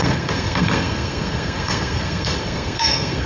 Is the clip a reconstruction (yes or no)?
yes